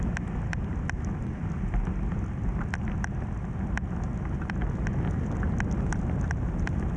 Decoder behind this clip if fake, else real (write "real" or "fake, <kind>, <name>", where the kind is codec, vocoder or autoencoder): real